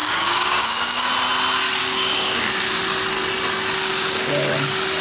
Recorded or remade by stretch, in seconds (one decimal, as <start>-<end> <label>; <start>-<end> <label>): 0.0-1.1 remade; 1.1-1.8 recorded; 1.8-2.4 remade; 2.4-3.9 recorded; 3.9-4.5 remade; 4.5-5.0 recorded